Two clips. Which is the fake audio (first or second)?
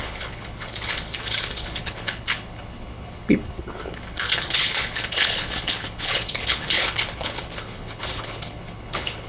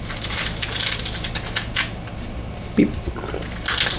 first